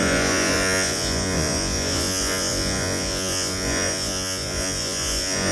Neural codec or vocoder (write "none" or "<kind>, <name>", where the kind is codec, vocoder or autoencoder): vocoder, Vocos